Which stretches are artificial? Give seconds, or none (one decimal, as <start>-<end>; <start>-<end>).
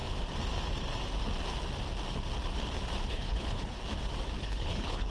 3.1-3.8; 4.4-5.1